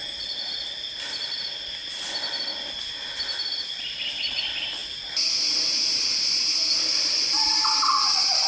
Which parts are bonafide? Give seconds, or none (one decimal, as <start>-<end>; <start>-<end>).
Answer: 0.0-8.5